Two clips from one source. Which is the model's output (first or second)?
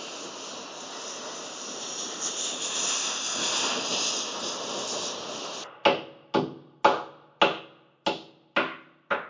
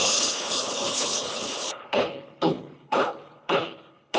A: second